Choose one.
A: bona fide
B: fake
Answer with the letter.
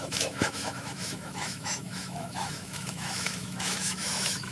B